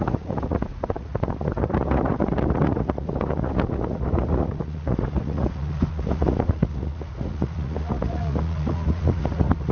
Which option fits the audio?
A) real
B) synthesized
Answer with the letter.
B